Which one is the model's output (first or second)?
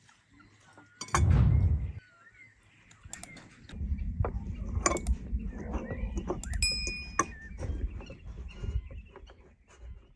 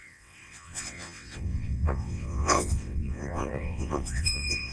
second